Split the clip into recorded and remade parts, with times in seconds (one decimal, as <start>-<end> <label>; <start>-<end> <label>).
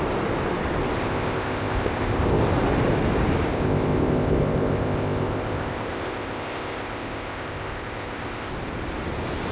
0.0-1.0 recorded; 1.0-2.4 remade; 2.4-3.5 recorded; 3.5-8.5 remade; 8.5-9.5 recorded